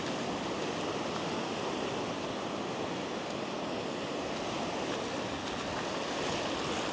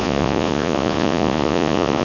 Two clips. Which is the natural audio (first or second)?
first